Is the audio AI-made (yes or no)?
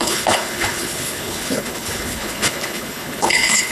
yes